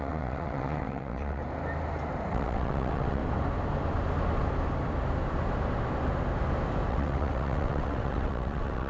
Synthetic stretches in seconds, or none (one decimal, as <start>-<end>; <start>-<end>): 0.0-1.4; 2.3-3.2; 6.9-8.9